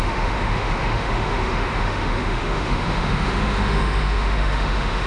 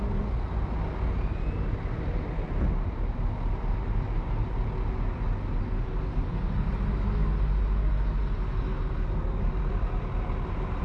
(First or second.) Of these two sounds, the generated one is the first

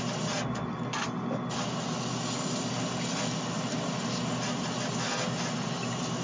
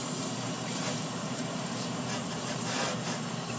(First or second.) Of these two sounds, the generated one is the second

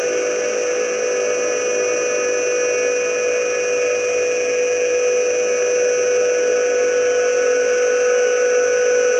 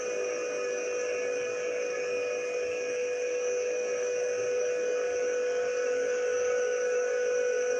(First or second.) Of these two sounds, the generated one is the second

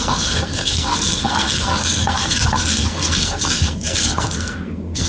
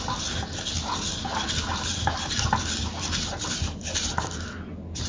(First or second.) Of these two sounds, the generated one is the first